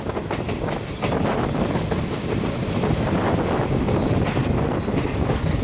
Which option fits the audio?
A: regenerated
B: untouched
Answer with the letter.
B